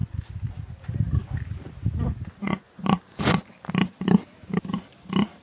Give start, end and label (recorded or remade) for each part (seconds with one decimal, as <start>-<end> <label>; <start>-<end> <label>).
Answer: 0.0-2.4 recorded; 2.4-3.0 remade; 3.0-5.4 recorded